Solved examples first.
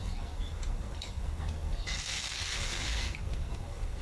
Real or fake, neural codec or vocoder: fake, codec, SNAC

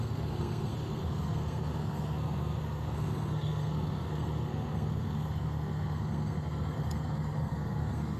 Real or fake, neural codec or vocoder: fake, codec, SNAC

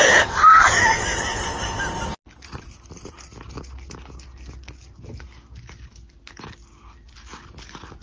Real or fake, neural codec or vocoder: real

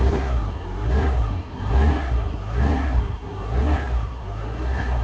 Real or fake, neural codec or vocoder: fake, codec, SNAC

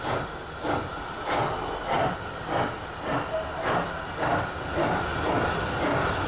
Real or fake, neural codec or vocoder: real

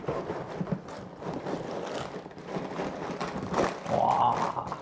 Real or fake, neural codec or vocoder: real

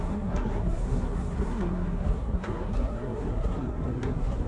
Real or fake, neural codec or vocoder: fake, codec, SNAC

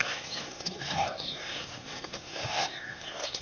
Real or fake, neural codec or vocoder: fake, codec, SNAC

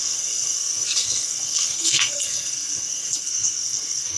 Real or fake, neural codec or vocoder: fake, codec, SNAC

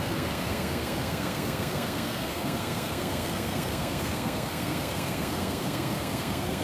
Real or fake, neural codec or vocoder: fake, codec, SNAC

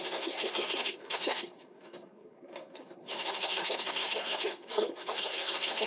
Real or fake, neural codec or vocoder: fake, codec, SNAC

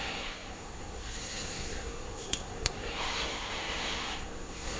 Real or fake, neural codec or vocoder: fake, codec, SNAC